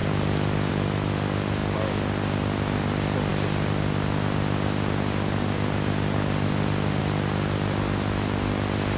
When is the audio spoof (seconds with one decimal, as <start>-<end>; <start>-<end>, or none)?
none